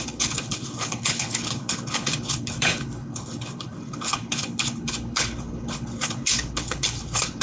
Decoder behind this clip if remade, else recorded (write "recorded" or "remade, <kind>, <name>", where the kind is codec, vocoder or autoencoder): remade, codec, HILCodec